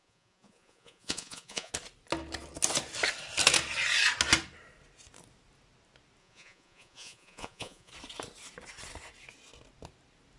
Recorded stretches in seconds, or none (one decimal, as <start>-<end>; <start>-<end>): 1.7-6.2; 7.9-10.4